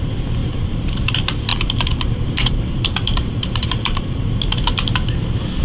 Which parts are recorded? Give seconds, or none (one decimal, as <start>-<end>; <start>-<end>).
0.0-0.4; 1.1-1.5; 4.2-5.6